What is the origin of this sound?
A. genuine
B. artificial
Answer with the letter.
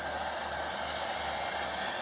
A